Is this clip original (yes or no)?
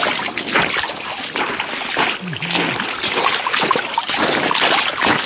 yes